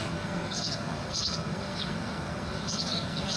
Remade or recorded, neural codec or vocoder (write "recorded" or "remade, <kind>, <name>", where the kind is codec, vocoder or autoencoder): remade, codec, SNAC